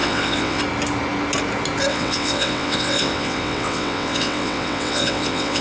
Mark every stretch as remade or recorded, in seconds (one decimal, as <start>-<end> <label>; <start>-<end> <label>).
0.0-0.6 remade; 0.6-1.9 recorded; 1.9-5.6 remade